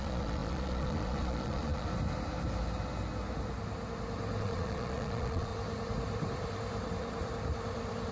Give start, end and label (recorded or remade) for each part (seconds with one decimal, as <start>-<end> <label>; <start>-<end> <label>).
0.0-1.9 remade; 1.9-4.4 recorded; 4.4-5.5 remade; 5.5-8.1 recorded